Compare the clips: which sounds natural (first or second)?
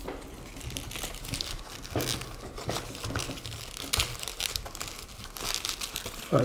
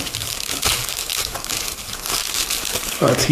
first